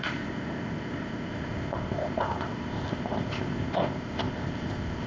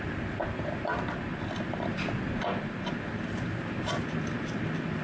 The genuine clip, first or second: second